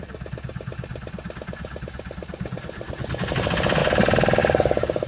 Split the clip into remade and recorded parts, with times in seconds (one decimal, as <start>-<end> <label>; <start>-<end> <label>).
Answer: 0.0-5.1 recorded